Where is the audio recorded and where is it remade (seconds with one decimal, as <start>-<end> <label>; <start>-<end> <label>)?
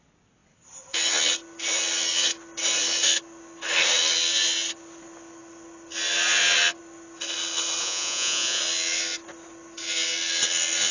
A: 0.0-7.8 recorded; 7.8-8.6 remade; 8.6-10.9 recorded